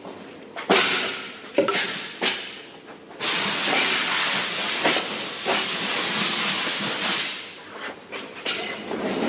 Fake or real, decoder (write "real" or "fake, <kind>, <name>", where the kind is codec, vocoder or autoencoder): real